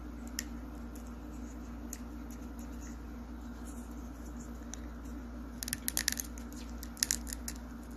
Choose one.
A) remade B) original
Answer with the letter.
B